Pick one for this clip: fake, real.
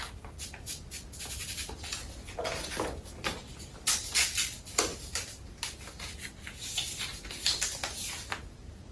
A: real